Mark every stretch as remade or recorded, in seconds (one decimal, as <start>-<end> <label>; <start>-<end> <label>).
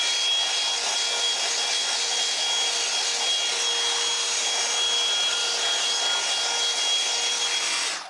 0.0-8.1 recorded